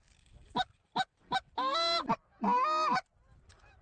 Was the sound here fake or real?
real